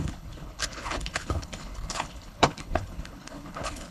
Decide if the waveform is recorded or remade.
remade